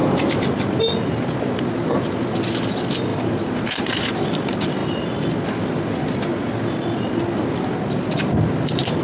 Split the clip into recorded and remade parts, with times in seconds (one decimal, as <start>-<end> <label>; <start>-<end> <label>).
0.0-0.8 remade; 0.8-3.1 recorded; 3.1-4.1 remade; 4.1-9.0 recorded